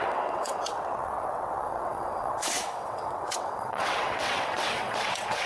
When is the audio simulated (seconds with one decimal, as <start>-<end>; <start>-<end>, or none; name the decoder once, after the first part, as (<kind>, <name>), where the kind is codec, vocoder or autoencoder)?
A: 0.0-5.5 (vocoder, WaveNeXt)